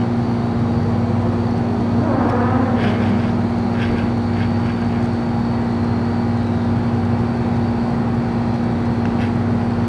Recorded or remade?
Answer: recorded